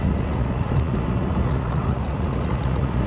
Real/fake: fake